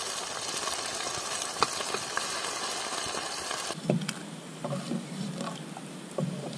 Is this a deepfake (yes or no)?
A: no